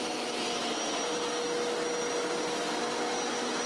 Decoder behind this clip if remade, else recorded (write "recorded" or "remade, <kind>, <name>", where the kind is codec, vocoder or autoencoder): recorded